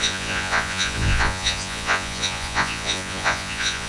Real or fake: fake